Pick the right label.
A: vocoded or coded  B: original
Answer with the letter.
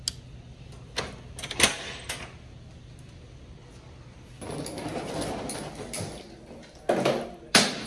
B